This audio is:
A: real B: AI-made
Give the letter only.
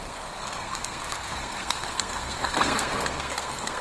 B